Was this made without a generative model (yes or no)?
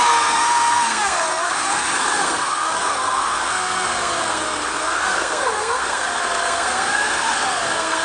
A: no